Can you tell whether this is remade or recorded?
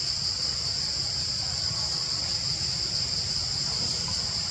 remade